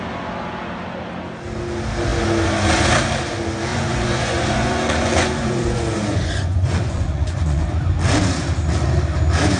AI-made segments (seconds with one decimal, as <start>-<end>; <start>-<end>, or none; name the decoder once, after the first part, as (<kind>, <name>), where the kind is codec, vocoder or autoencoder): 3.7-7.8 (vocoder, Vocos)